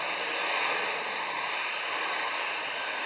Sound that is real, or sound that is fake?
real